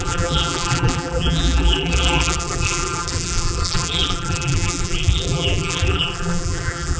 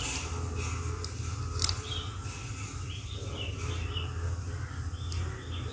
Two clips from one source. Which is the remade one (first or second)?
first